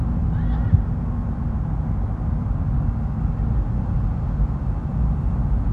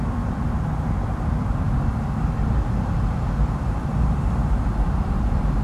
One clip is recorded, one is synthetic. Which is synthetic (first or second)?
second